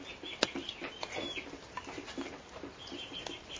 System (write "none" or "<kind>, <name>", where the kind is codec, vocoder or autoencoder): none